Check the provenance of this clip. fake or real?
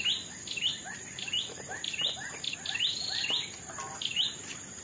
real